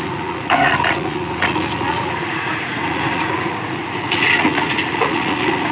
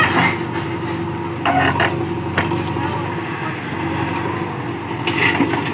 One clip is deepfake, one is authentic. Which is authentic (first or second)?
second